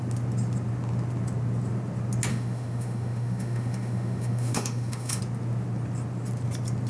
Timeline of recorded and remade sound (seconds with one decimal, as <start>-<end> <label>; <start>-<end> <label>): 0.0-2.3 recorded; 2.3-5.2 remade; 5.2-6.9 recorded